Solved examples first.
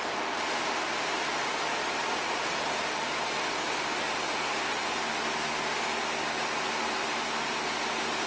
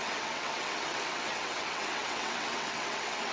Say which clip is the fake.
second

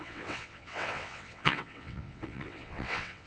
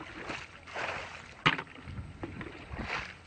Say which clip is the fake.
first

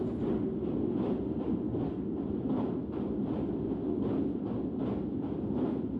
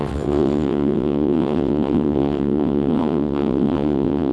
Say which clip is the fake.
second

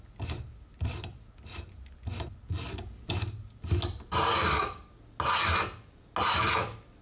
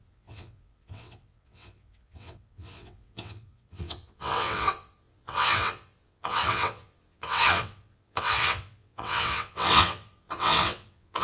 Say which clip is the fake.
second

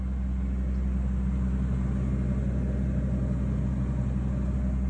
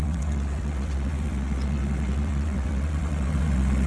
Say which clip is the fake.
second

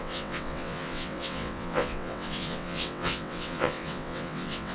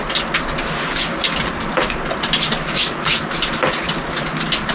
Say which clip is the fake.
first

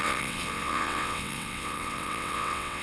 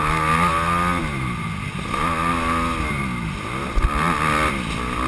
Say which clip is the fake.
first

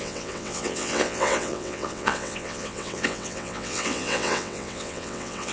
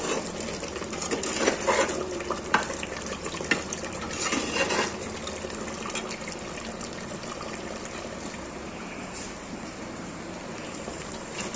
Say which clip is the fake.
first